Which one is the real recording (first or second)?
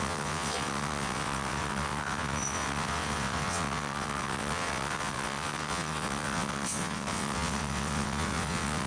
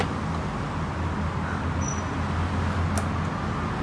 second